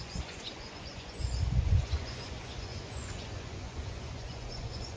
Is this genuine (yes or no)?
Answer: no